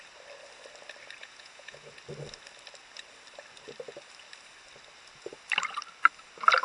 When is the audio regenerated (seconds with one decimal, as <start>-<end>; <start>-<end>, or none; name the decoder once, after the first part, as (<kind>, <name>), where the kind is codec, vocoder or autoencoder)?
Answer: 1.2-1.9 (vocoder, Vocos)